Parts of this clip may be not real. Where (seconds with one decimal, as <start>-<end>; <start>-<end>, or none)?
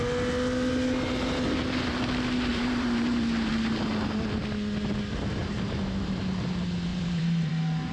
2.5-3.5; 5.4-6.2; 6.9-7.5